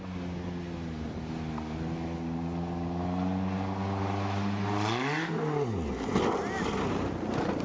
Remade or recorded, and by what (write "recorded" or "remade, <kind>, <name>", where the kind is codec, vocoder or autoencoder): recorded